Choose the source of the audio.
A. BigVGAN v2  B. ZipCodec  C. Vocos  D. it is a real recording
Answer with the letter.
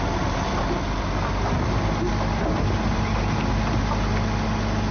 D